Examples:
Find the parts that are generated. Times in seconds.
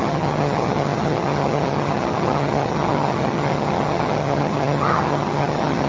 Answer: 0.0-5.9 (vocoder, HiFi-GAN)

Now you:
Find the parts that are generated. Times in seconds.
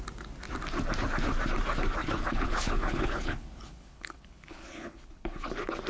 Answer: 2.0-5.5 (codec, HILCodec)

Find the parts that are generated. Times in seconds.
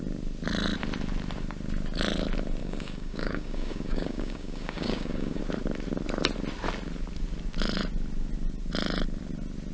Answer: 2.6-5.4 (codec, DAC)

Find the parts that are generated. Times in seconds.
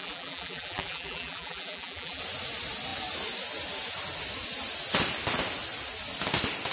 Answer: 0.0-2.2 (vocoder, BigVGAN v2)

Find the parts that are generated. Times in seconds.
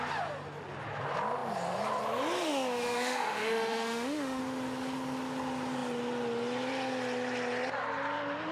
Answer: 2.4-4.4 (autoencoder, DAC-VAE)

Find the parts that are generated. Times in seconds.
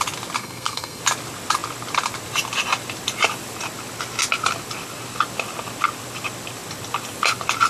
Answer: 0.4-1.0 (codec, SNAC)